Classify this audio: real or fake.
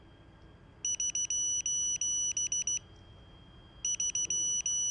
real